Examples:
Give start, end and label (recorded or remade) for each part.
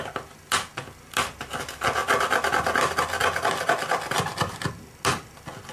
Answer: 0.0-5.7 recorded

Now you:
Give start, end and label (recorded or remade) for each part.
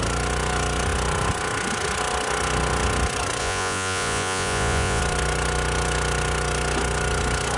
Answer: 0.0-3.4 recorded; 3.4-5.0 remade; 5.0-7.6 recorded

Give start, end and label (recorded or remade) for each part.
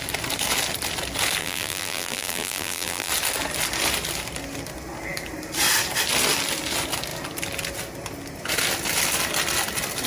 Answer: 0.0-1.4 recorded; 1.4-3.1 remade; 3.1-10.1 recorded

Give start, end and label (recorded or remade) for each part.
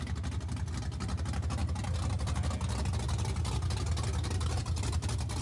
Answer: 0.0-5.4 recorded